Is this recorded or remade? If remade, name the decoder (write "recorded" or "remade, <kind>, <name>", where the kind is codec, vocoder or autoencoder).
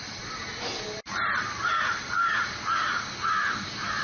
recorded